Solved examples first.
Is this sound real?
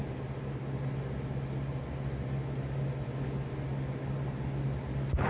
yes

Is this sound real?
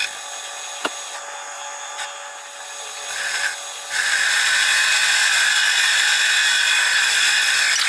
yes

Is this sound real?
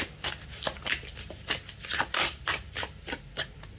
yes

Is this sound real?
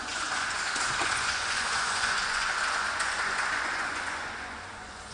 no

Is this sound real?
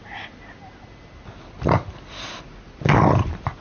yes